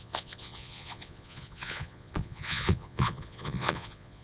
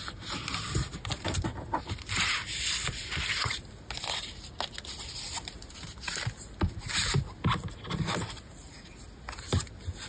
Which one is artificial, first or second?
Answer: first